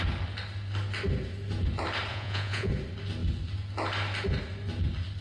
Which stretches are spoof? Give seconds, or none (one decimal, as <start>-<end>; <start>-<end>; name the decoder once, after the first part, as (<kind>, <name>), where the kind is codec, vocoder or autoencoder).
2.1-2.7 (vocoder, Vocos)